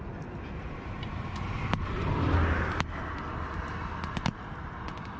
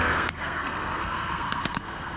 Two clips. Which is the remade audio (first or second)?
second